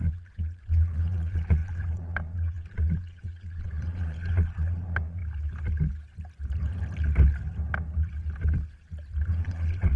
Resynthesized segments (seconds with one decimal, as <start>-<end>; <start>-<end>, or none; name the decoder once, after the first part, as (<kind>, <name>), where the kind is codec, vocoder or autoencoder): 0.0-5.2 (vocoder, Vocos); 9.3-10.0